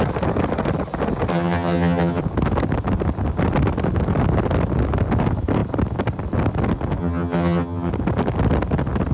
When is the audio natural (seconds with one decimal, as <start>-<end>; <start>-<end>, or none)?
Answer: 0.0-1.3; 2.2-7.0; 7.9-9.1